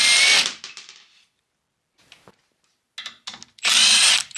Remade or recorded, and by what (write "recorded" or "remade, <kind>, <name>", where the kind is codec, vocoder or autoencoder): recorded